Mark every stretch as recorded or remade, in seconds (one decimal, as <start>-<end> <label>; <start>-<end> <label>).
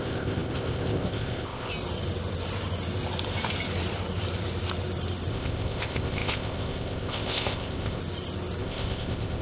0.0-1.7 remade; 1.7-5.3 recorded; 5.3-8.0 remade; 8.0-8.6 recorded; 8.6-9.4 remade